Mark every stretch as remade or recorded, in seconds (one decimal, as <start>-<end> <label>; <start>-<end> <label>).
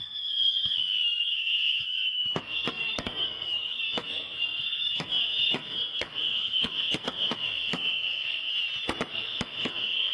0.0-8.5 remade; 8.5-9.1 recorded; 9.1-10.1 remade